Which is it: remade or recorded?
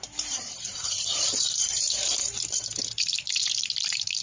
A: remade